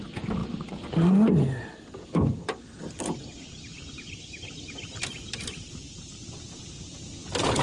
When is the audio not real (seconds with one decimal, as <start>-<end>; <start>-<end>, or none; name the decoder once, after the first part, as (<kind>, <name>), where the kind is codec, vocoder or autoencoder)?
none